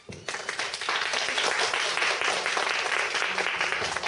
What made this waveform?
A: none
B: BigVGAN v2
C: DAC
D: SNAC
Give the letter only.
A